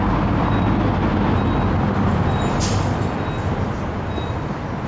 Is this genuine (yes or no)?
yes